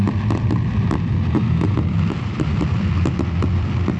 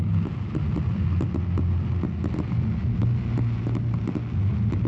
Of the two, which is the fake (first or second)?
first